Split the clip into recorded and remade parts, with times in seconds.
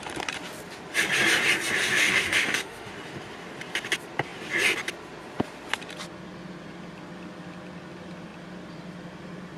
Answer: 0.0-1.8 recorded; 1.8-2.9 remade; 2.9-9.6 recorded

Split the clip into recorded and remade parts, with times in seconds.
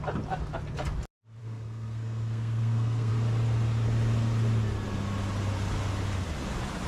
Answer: 0.0-1.4 recorded; 1.4-3.1 remade; 3.1-6.9 recorded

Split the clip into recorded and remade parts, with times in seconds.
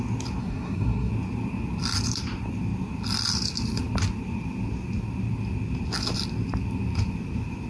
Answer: 0.0-0.4 recorded; 0.4-1.1 remade; 1.1-7.7 recorded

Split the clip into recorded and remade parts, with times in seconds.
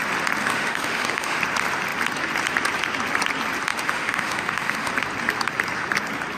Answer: 0.0-0.4 recorded; 0.4-1.4 remade; 1.4-3.7 recorded; 3.7-4.9 remade; 4.9-6.4 recorded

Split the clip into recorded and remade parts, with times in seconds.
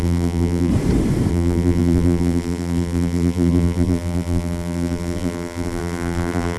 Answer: 0.0-0.7 remade; 0.7-1.3 recorded; 1.3-6.6 remade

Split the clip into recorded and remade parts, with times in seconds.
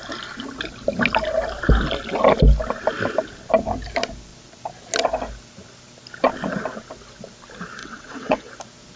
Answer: 0.0-7.8 recorded; 7.8-8.5 remade; 8.5-9.0 recorded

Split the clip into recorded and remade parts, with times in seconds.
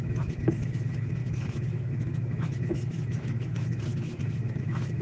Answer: 0.0-5.0 remade